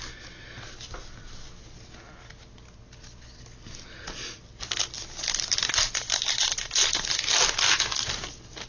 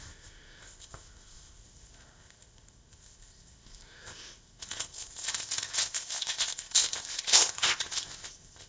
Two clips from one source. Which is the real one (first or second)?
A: first